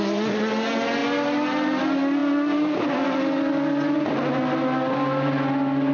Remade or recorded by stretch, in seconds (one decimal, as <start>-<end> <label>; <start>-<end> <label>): 0.0-5.9 recorded